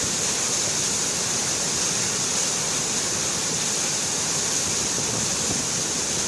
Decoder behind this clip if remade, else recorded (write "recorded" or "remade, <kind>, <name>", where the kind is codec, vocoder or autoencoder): recorded